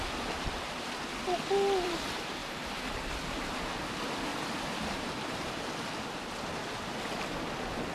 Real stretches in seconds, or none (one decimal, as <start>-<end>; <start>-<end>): 0.0-2.4; 3.1-4.3; 5.7-7.9